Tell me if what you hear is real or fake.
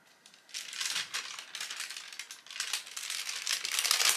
real